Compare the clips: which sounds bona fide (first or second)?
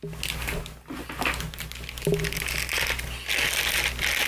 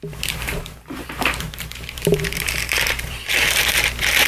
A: first